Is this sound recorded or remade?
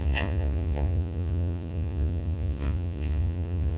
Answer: remade